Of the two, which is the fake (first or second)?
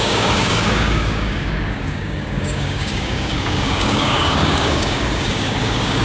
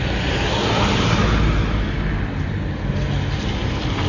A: first